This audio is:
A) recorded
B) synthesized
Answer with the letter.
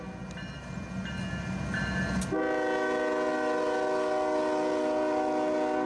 A